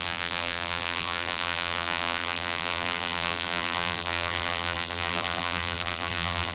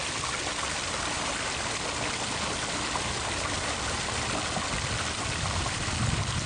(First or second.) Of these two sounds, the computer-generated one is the first